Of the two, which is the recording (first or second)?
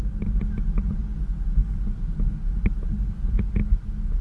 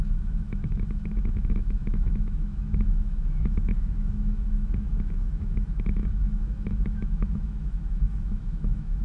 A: first